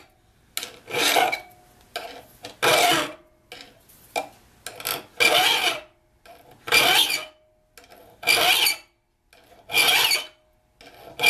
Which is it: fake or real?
real